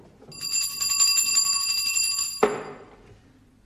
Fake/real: real